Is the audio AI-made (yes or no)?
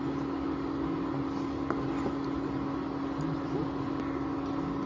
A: no